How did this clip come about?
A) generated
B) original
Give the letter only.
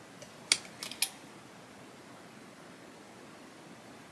B